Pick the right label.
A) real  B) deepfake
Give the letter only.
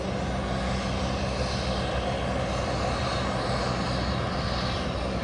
A